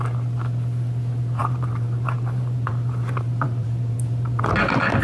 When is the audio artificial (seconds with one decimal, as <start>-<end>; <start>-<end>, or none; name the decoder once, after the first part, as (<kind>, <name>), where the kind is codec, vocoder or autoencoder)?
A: 1.4-4.4 (vocoder, BigVGAN v2)